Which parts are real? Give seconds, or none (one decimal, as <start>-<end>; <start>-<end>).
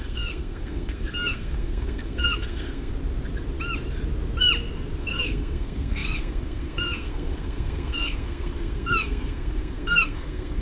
2.9-5.0